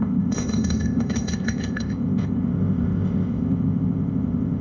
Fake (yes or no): yes